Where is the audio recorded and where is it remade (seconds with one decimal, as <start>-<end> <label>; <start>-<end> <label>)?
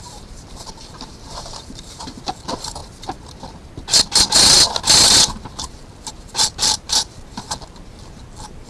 0.0-2.8 remade; 2.8-5.7 recorded; 5.7-8.7 remade